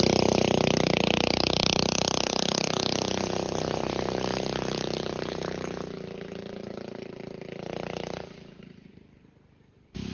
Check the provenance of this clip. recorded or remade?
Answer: remade